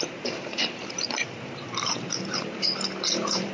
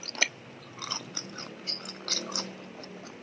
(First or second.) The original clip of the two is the second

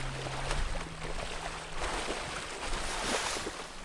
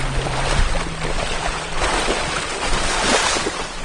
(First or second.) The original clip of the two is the first